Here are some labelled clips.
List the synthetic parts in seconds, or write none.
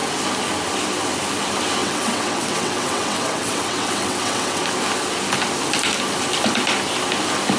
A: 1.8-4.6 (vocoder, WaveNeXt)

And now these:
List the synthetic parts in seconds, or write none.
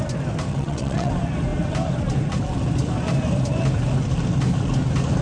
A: 0.5-1.1 (vocoder, WaveNeXt)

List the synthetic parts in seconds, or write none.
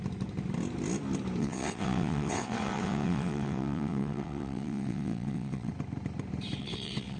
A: 1.4-5.7 (vocoder, WaveNeXt); 6.6-7.2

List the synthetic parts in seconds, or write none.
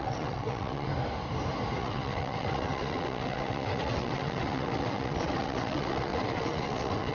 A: 0.0-0.9 (vocoder, WaveNeXt); 1.8-7.1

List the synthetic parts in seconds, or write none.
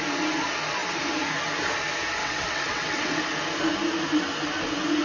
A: 2.2-3.2 (vocoder, WaveNeXt)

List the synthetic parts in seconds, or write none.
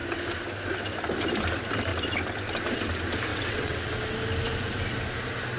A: 3.3-3.9 (vocoder, WaveNeXt)